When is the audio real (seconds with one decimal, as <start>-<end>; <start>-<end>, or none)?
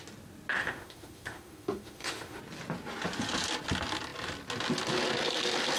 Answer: 0.0-0.6; 2.4-5.8